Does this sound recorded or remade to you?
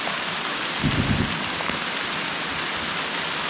recorded